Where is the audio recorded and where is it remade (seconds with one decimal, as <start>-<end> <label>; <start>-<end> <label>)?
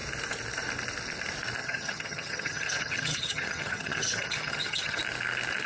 0.0-1.6 recorded; 1.6-5.0 remade; 5.0-5.7 recorded